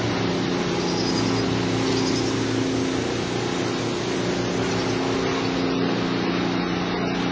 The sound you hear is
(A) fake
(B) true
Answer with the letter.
B